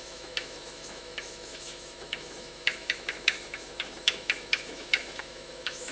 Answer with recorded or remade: remade